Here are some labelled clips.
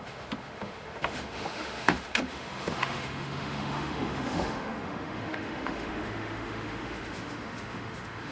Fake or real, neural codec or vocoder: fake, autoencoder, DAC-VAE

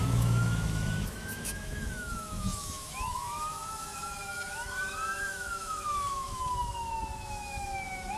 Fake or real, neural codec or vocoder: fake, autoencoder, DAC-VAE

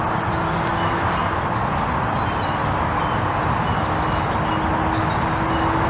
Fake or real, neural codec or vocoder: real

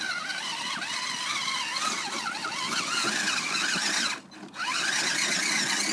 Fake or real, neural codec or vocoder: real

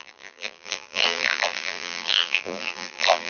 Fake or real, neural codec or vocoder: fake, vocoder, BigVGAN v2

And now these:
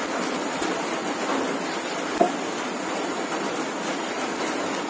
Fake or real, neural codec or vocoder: real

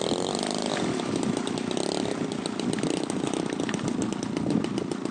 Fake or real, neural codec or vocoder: real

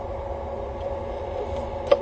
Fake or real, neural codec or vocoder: real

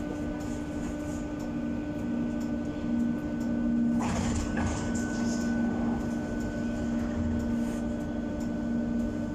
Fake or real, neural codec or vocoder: real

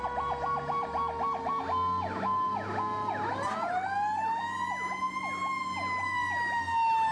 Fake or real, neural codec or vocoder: real